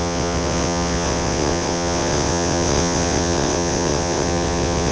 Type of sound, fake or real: fake